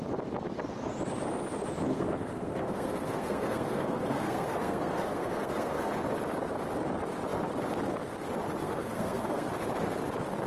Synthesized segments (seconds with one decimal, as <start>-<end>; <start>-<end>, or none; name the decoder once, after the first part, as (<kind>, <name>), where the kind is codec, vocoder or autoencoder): 1.9-5.9 (codec, SNAC); 8.6-9.5